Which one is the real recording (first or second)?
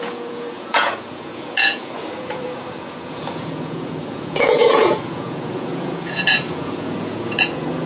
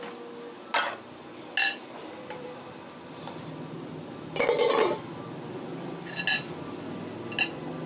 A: second